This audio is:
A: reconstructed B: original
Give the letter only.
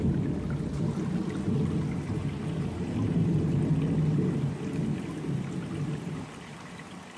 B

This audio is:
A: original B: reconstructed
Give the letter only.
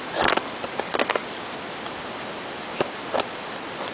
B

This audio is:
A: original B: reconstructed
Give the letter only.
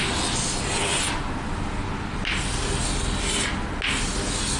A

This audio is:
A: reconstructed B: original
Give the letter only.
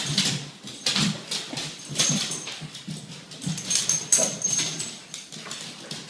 B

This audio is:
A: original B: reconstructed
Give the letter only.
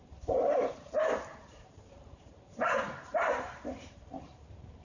B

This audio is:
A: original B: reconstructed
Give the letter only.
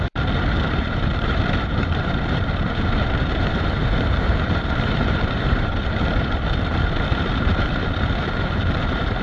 B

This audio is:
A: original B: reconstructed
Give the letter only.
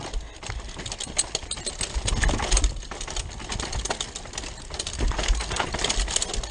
A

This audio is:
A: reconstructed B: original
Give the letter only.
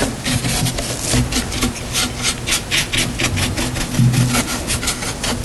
B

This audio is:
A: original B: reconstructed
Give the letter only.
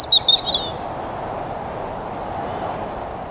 A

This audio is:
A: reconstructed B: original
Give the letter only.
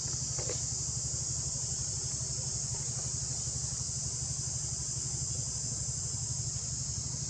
B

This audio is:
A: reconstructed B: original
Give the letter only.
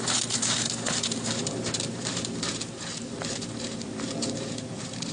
A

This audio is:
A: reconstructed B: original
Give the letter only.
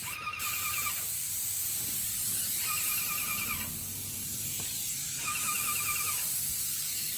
A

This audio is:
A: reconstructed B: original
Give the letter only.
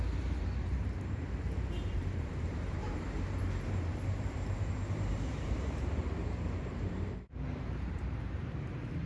A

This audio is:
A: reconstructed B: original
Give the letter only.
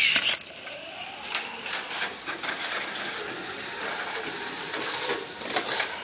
B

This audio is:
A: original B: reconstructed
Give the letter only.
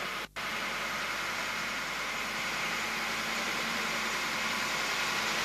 A